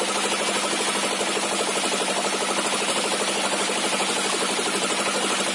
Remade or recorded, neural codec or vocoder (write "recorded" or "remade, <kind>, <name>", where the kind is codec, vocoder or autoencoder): recorded